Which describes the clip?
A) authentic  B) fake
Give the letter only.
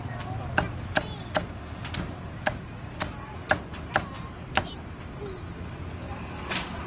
A